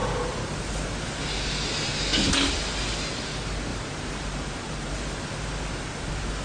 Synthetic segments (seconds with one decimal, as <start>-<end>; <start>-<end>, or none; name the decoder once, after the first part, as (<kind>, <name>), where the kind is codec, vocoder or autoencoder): 3.7-4.9 (vocoder, BigVGAN v2)